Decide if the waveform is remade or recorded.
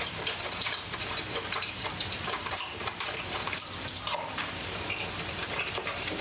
remade